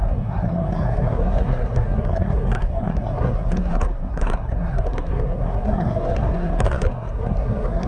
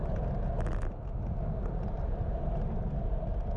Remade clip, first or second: first